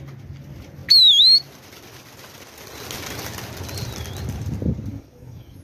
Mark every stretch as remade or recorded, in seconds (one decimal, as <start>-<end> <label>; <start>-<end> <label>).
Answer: 0.0-4.9 recorded; 4.9-5.6 remade